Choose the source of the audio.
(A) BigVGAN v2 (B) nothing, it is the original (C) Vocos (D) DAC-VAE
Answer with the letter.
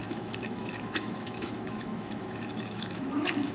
D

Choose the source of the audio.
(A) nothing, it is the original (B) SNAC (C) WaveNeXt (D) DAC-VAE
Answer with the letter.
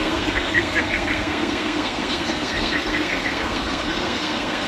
B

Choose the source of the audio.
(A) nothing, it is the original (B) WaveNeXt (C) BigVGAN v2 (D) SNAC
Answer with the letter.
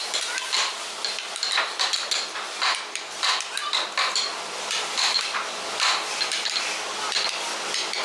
C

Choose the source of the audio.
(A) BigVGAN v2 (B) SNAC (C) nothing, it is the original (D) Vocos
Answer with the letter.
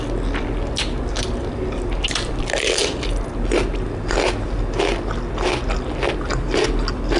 C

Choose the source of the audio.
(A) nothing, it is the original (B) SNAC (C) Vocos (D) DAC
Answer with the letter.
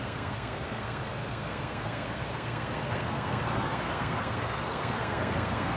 B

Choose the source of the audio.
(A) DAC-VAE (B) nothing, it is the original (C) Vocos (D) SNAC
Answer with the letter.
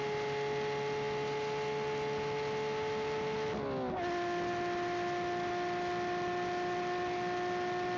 B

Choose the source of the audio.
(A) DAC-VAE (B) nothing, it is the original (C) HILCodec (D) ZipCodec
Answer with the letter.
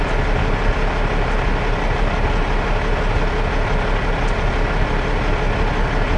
B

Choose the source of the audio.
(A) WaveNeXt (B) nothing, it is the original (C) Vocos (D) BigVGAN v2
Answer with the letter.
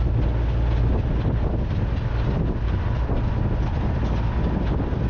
B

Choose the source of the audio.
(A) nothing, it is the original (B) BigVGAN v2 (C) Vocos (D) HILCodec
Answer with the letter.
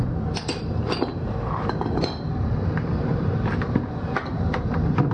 B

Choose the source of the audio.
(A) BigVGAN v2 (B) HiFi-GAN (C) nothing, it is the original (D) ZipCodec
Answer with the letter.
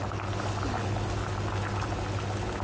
C